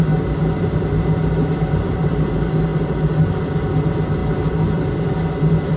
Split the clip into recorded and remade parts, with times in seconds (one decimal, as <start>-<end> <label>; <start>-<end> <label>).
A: 0.0-5.8 recorded